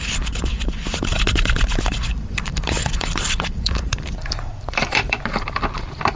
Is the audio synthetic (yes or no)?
yes